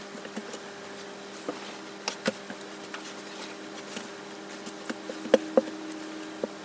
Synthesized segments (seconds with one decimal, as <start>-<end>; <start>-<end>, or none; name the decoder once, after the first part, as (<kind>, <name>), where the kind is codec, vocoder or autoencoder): none